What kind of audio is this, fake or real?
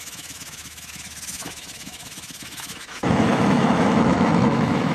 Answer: fake